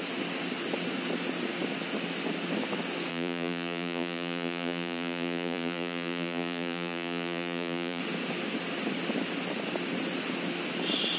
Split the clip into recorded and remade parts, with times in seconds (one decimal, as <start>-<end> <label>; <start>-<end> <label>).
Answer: 0.0-3.1 recorded; 3.1-8.0 remade; 8.0-11.2 recorded